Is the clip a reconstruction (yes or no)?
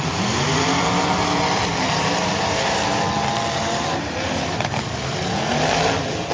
yes